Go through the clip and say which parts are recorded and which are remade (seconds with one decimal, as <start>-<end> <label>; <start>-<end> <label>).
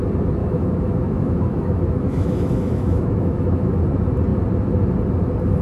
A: 0.0-0.4 recorded; 0.4-3.8 remade; 3.8-5.6 recorded